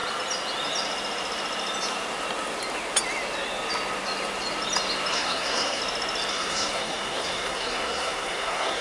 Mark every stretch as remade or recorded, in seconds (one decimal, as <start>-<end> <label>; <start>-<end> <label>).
0.0-5.1 recorded; 5.1-5.8 remade; 5.8-6.3 recorded; 6.3-8.8 remade